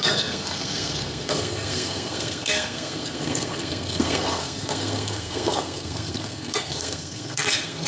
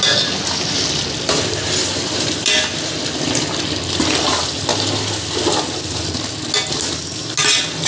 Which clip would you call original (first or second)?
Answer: second